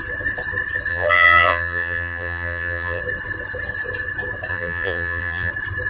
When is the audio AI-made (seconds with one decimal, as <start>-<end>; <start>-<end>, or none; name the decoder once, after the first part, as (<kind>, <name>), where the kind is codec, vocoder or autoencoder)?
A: 0.9-3.0 (vocoder, BigVGAN v2); 4.5-5.5